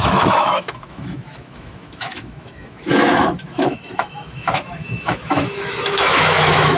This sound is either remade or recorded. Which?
remade